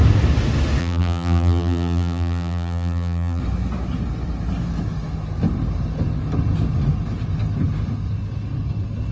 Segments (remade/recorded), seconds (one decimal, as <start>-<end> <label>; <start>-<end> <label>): 0.0-0.8 recorded; 0.8-3.4 remade; 3.4-9.1 recorded